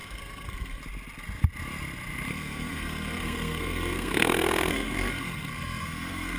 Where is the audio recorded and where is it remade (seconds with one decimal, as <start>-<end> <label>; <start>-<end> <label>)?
0.0-0.8 remade; 0.8-2.3 recorded; 2.3-6.4 remade